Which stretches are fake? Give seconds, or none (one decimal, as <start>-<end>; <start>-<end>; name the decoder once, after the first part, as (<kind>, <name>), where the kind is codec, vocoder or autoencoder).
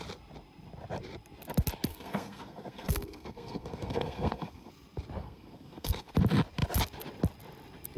1.9-4.7 (codec, SNAC); 5.2-6.1